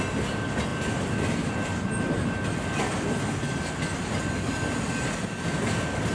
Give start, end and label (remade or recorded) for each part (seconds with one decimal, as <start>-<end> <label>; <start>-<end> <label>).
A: 0.0-6.1 recorded